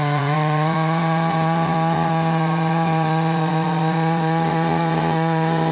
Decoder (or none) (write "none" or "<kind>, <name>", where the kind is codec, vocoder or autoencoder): vocoder, Vocos